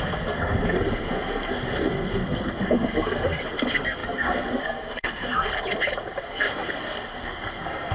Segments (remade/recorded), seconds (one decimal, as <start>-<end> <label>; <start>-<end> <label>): 0.0-5.5 remade; 5.5-6.2 recorded; 6.2-7.9 remade